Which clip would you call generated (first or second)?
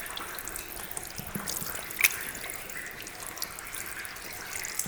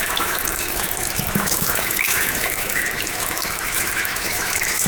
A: second